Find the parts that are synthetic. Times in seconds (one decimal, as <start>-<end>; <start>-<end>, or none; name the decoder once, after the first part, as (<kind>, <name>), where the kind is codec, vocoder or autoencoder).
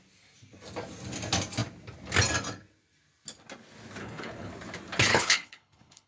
4.0-4.5 (codec, HILCodec); 5.1-6.1